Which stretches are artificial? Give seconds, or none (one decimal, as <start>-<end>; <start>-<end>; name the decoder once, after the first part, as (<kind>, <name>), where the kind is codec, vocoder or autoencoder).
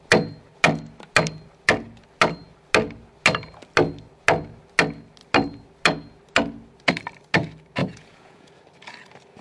7.8-8.5 (vocoder, Vocos)